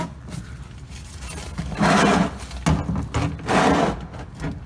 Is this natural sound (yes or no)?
yes